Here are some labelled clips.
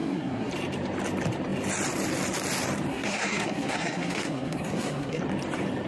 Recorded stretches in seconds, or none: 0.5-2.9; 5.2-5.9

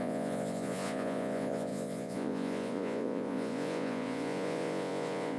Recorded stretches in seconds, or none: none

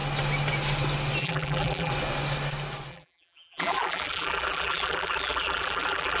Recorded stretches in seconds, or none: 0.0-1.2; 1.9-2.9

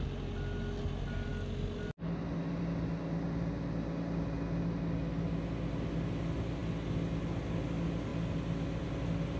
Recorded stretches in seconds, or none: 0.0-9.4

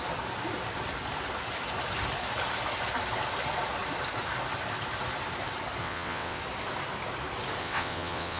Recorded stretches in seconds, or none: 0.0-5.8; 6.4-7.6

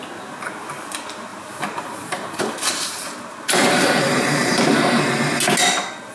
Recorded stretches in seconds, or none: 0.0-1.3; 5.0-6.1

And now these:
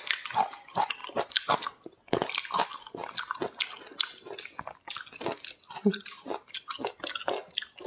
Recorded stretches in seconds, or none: 0.0-7.9

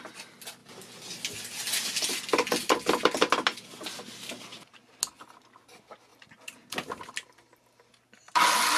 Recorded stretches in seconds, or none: 0.0-8.8